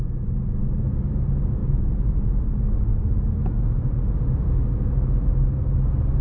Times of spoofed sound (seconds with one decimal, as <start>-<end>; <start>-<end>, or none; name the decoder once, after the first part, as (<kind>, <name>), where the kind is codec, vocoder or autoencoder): 1.6-2.5 (vocoder, BigVGAN v2)